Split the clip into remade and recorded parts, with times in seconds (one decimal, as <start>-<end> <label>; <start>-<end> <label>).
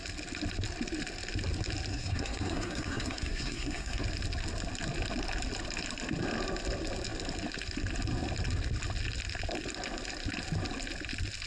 0.0-1.9 recorded; 1.9-4.0 remade; 4.0-11.5 recorded